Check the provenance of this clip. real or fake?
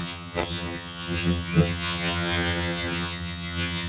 fake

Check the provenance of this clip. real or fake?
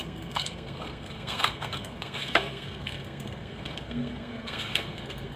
fake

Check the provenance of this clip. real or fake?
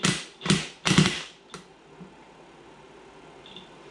real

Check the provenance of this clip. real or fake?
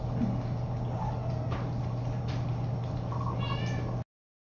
real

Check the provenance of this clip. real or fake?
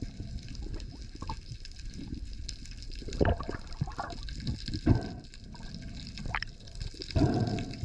real